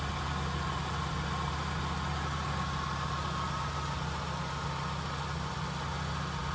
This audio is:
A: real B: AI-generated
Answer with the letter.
A